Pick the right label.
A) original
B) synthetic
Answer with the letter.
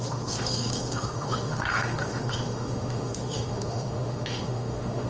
B